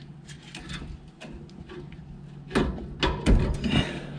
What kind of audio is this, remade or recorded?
recorded